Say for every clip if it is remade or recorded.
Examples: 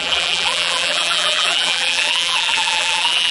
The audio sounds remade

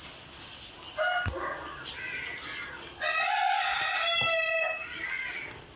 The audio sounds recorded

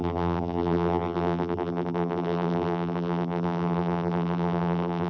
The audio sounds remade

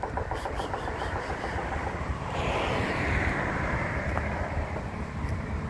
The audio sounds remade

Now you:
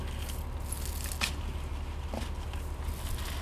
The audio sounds recorded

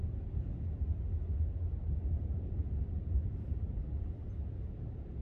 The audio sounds recorded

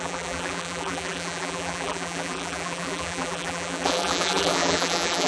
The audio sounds remade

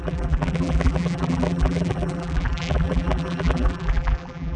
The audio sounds remade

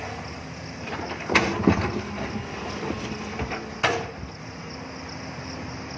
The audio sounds remade